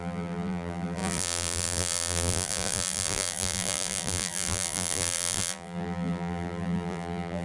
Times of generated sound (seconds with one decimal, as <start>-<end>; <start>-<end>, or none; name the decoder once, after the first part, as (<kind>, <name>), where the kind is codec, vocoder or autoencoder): 0.0-7.4 (vocoder, BigVGAN v2)